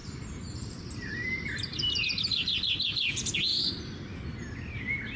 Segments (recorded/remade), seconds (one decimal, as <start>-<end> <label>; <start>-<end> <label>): 0.0-3.1 remade; 3.1-3.5 recorded; 3.5-4.1 remade; 4.1-5.2 recorded

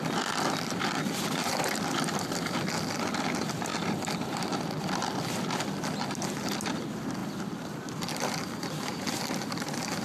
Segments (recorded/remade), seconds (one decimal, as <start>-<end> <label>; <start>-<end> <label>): 0.0-10.0 recorded

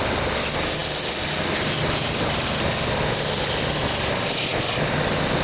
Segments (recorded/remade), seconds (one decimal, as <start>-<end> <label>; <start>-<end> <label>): 0.0-5.4 recorded

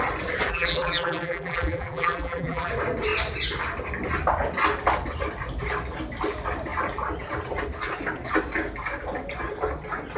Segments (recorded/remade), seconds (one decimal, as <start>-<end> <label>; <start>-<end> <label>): 0.0-0.5 recorded; 0.5-2.7 remade; 2.7-10.2 recorded